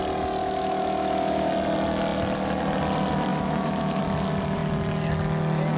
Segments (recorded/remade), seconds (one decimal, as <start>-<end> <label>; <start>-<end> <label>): 0.0-0.4 recorded; 0.4-1.5 remade; 1.5-3.3 recorded; 3.3-4.0 remade; 4.0-5.8 recorded